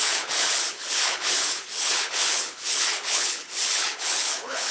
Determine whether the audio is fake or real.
fake